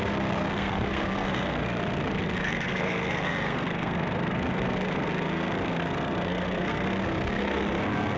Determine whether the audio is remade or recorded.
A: remade